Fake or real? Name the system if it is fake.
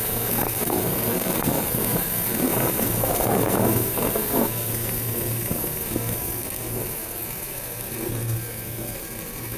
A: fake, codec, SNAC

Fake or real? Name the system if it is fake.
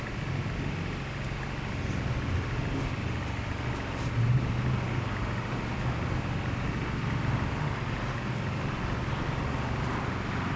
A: real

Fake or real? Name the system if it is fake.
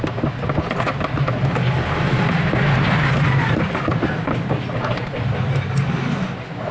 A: real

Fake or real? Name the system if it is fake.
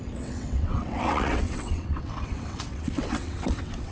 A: fake, vocoder, WaveNeXt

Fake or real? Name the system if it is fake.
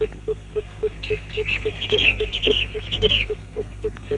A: fake, codec, SNAC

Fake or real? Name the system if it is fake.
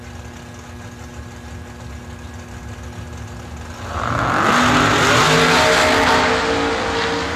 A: real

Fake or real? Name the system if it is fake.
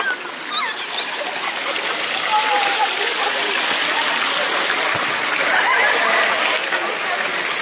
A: real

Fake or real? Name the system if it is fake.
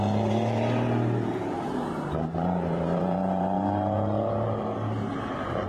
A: fake, vocoder, BigVGAN v2